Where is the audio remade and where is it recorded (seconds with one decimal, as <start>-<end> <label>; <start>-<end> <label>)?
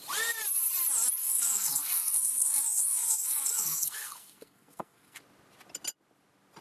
0.0-1.2 recorded; 1.2-5.2 remade; 5.2-6.6 recorded